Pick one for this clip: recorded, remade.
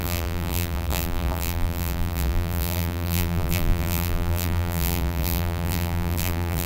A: remade